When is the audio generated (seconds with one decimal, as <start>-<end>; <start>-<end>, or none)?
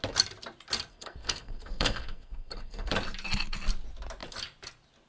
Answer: 0.9-2.9